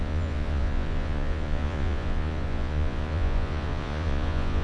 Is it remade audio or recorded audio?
remade